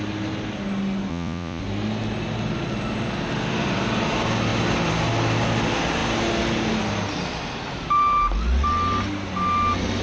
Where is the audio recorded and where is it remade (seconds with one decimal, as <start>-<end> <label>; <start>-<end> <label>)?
0.0-1.1 recorded; 1.1-1.6 remade; 1.6-10.0 recorded